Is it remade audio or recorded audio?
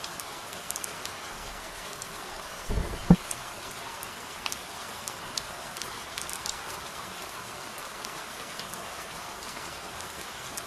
remade